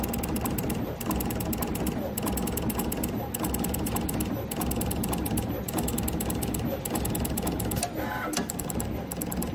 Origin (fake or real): real